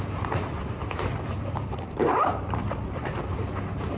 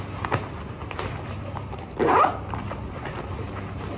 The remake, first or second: first